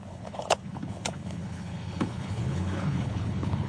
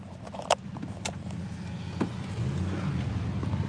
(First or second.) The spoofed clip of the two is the first